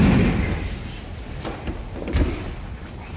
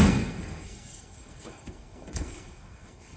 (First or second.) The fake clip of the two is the second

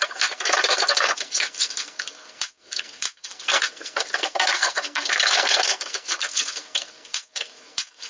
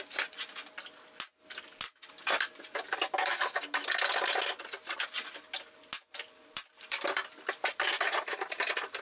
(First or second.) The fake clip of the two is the first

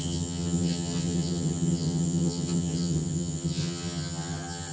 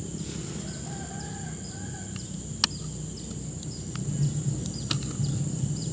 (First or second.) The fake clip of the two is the first